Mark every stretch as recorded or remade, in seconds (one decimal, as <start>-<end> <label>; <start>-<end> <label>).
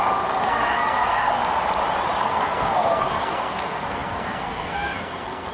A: 0.0-1.4 remade; 1.4-2.2 recorded; 2.2-5.5 remade